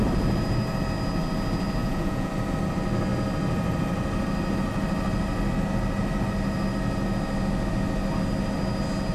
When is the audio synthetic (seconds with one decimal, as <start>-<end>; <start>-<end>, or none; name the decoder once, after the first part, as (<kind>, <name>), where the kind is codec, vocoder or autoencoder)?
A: 1.8-2.3 (vocoder, Vocos)